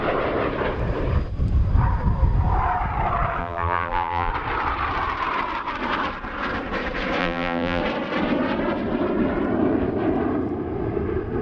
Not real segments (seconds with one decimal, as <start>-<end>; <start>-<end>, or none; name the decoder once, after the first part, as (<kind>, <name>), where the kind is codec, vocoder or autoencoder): 3.4-4.3 (vocoder, BigVGAN v2); 7.2-7.8